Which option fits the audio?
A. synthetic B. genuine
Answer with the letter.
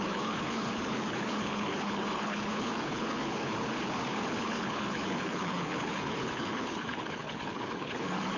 A